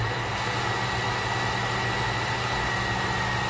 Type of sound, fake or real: real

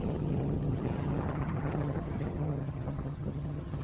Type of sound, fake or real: fake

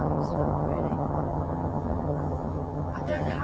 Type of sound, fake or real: fake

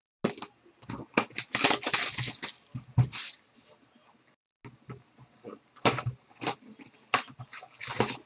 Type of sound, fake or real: real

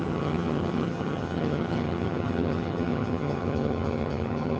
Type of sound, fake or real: fake